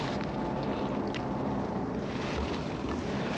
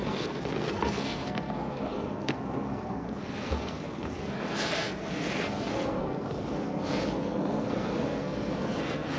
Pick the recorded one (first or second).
first